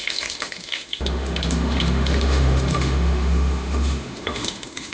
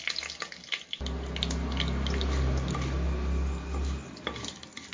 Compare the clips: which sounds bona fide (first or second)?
second